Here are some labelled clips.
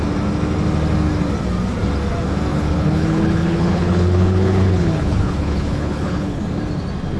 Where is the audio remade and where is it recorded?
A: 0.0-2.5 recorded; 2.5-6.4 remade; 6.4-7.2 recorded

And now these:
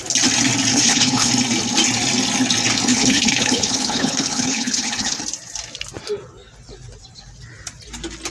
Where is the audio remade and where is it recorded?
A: 0.0-0.7 recorded; 0.7-1.3 remade; 1.3-2.9 recorded; 2.9-5.2 remade; 5.2-8.3 recorded

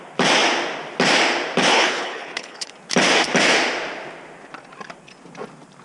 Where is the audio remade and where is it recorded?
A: 0.0-1.7 recorded; 1.7-2.7 remade; 2.7-5.8 recorded

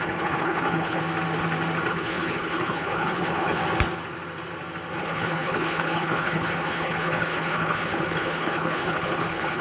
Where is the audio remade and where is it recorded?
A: 0.0-1.0 remade; 1.0-1.9 recorded; 1.9-3.6 remade; 3.6-5.0 recorded; 5.0-9.6 remade

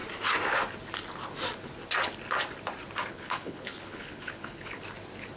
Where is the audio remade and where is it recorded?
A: 0.0-3.1 recorded; 3.1-4.8 remade; 4.8-5.4 recorded

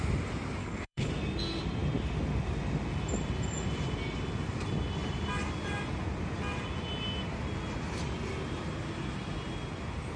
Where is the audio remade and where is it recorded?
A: 0.0-0.6 recorded; 0.6-1.1 remade; 1.1-10.2 recorded